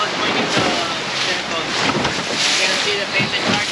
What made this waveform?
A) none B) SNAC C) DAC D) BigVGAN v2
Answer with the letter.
A